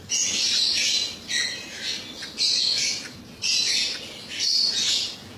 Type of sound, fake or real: real